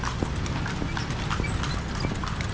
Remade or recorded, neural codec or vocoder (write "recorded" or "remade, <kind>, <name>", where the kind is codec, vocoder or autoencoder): recorded